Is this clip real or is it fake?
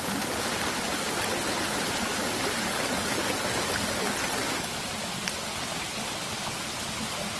real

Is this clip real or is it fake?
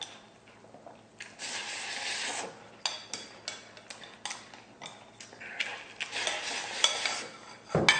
real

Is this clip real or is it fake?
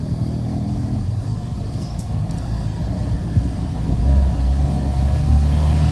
fake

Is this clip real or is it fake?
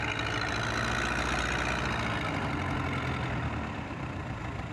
real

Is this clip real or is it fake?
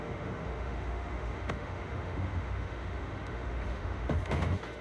fake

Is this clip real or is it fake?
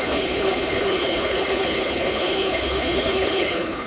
fake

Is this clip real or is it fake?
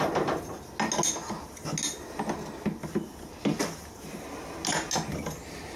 real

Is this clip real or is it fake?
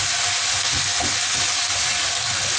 real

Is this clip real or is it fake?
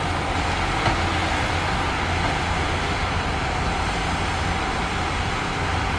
real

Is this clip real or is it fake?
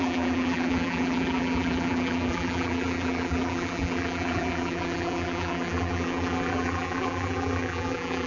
fake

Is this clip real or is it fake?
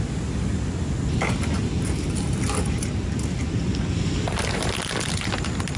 real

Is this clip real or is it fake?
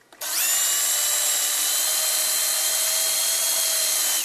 real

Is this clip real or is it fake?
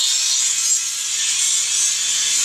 real